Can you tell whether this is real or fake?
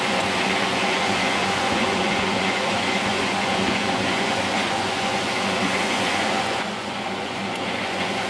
fake